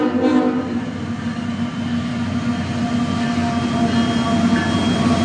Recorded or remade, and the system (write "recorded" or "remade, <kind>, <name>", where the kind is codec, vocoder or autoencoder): recorded